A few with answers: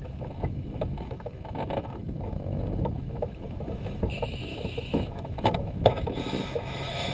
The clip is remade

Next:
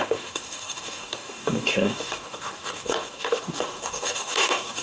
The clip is remade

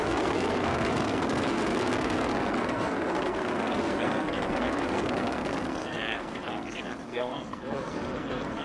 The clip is remade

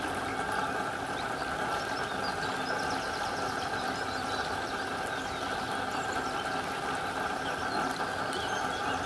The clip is recorded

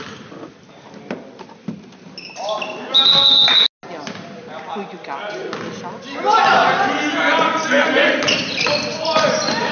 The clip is recorded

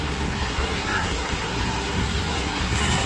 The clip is remade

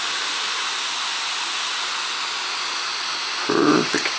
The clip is recorded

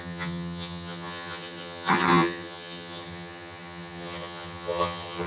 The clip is remade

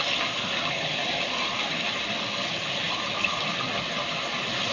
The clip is recorded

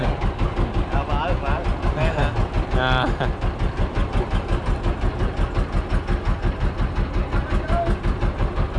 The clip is recorded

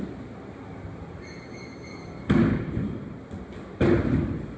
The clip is recorded